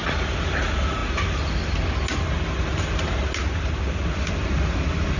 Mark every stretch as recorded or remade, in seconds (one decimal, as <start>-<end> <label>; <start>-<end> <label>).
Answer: 0.0-5.2 recorded

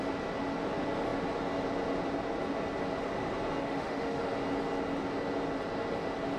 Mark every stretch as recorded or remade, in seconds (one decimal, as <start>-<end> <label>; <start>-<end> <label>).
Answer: 0.0-3.6 recorded; 3.6-4.2 remade; 4.2-6.4 recorded

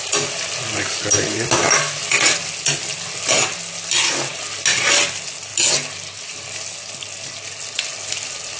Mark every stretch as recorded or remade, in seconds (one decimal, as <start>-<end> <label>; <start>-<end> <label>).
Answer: 0.0-8.6 recorded

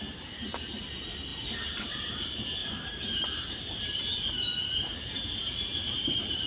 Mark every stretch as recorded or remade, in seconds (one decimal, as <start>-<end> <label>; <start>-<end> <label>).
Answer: 0.0-6.5 remade

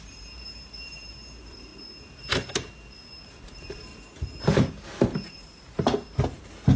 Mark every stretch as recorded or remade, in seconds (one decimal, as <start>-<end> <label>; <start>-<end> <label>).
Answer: 0.0-1.7 remade; 1.7-3.4 recorded; 3.4-3.9 remade; 3.9-4.7 recorded; 4.7-5.7 remade; 5.7-6.8 recorded

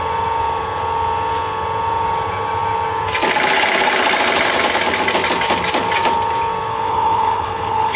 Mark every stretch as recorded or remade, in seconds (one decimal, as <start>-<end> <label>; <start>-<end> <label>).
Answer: 0.0-6.7 recorded; 6.7-8.0 remade